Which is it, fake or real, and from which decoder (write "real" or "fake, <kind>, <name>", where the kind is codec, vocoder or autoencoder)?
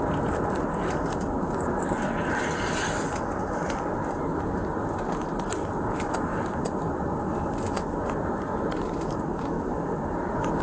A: real